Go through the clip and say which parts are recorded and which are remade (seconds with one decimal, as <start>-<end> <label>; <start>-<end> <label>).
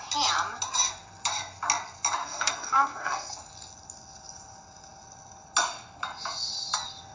0.0-2.2 recorded; 2.2-3.3 remade; 3.3-7.1 recorded